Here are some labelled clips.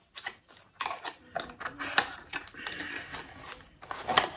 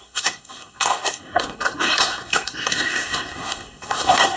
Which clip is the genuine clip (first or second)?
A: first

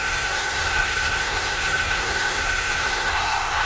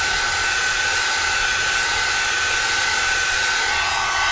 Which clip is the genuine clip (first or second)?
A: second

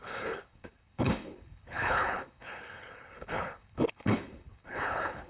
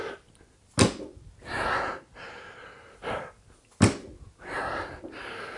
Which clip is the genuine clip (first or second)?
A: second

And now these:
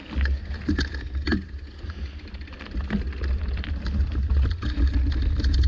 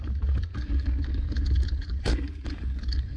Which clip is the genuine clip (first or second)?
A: first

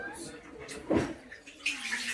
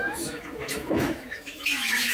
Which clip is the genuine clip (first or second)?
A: first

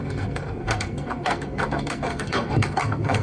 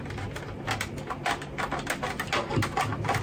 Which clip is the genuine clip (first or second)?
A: second